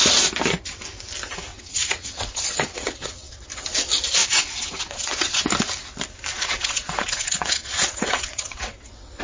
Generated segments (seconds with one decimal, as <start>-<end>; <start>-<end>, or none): 1.5-3.4; 4.2-5.4; 6.3-9.2